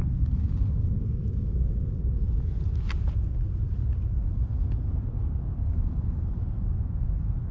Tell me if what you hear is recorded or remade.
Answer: recorded